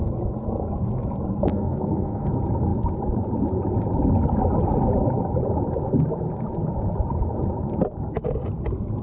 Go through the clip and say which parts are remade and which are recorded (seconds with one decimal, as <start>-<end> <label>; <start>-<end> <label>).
0.0-1.5 recorded; 1.5-2.3 remade; 2.3-9.0 recorded